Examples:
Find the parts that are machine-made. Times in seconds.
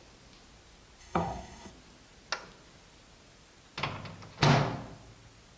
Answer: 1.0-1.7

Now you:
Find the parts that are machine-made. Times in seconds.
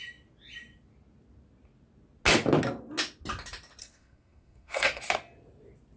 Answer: 3.8-5.0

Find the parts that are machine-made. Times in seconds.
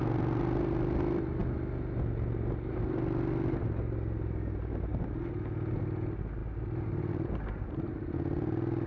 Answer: none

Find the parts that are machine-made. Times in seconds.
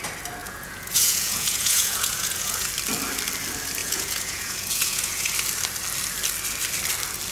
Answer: 0.4-2.7; 3.8-5.3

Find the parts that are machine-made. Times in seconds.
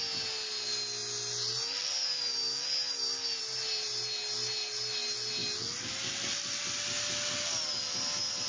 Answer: none